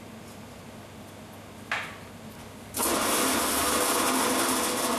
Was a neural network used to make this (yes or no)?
no